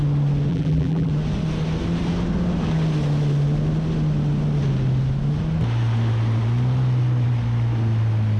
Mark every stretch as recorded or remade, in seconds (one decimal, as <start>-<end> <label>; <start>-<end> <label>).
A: 0.0-0.5 recorded; 0.5-1.1 remade; 1.1-8.4 recorded

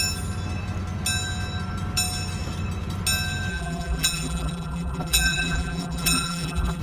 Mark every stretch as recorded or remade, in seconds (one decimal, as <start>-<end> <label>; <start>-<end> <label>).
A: 0.0-3.5 recorded; 3.5-6.8 remade

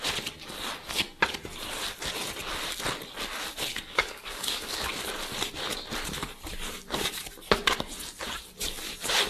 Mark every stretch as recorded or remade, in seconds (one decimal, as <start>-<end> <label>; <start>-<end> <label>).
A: 0.0-3.7 recorded; 3.7-4.9 remade; 4.9-9.3 recorded

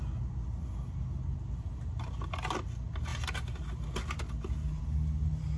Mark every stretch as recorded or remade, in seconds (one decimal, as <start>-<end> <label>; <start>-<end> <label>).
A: 0.0-5.6 recorded

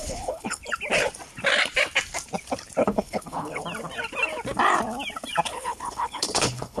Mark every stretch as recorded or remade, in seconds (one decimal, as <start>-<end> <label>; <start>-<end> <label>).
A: 0.0-0.6 remade; 0.6-2.8 recorded; 2.8-3.6 remade; 3.6-5.5 recorded; 5.5-6.8 remade

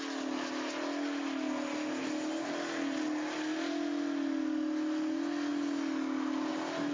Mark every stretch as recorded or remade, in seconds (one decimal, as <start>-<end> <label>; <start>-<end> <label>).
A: 0.0-6.9 recorded